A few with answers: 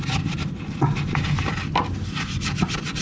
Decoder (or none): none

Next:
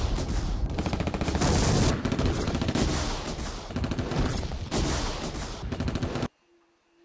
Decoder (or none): none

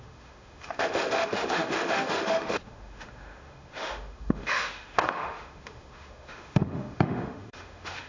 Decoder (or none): autoencoder, DAC-VAE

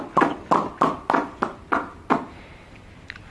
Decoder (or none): none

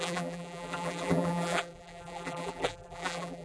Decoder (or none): vocoder, BigVGAN v2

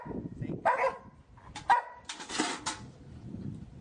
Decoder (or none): none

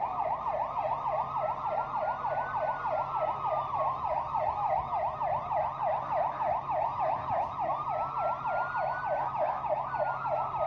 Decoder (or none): none